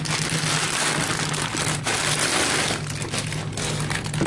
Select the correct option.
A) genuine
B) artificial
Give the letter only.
A